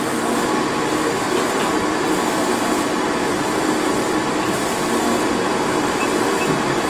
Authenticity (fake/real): real